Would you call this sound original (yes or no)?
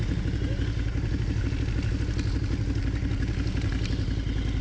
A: yes